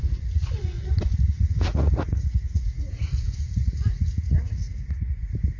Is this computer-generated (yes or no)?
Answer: yes